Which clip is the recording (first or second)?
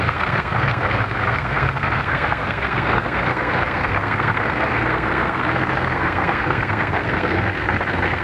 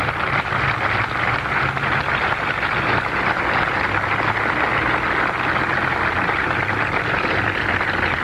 second